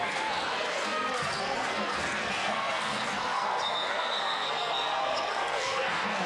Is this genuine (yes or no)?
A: no